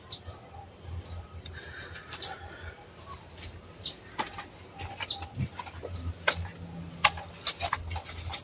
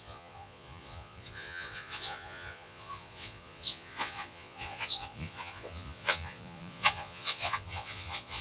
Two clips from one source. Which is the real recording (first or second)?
first